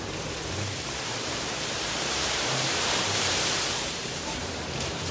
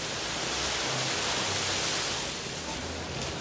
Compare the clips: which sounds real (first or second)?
second